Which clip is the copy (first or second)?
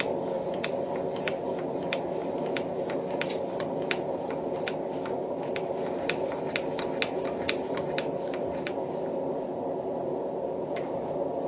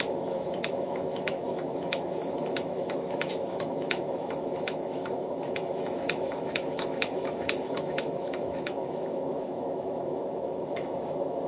second